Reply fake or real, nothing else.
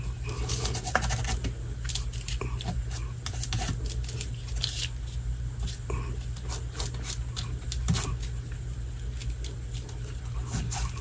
real